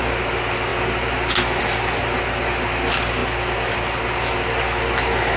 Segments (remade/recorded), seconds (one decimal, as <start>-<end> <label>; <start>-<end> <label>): 0.0-5.4 recorded